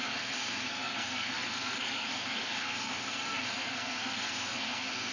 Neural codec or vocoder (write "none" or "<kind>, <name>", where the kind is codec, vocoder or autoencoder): codec, SNAC